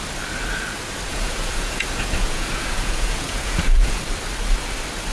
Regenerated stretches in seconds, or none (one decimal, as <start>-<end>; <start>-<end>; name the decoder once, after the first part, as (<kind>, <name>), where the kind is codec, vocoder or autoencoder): 1.1-4.0 (vocoder, Vocos)